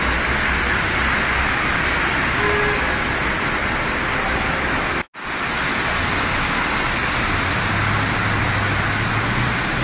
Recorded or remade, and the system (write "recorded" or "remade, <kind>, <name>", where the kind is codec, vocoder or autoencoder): recorded